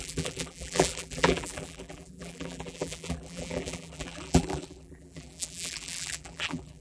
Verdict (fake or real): fake